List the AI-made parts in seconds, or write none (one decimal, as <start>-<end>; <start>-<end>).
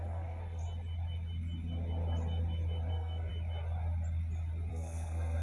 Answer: 0.0-0.6; 2.9-3.3; 4.7-5.4